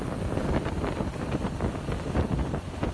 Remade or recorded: remade